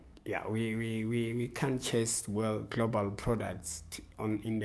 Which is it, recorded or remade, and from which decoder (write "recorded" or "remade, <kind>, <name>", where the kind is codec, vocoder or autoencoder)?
remade, codec, DAC